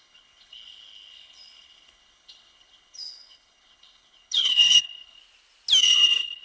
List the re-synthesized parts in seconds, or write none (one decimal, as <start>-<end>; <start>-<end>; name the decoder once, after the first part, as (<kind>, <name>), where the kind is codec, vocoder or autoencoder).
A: 0.0-5.2 (codec, HILCodec); 5.8-6.4